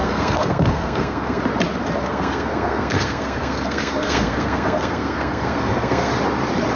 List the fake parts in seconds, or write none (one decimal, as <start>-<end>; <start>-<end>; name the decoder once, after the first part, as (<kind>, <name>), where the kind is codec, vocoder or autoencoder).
0.0-1.4 (codec, SNAC); 2.0-6.1